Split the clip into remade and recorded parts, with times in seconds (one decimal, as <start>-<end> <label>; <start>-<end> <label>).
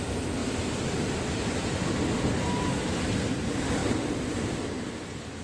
0.0-5.4 recorded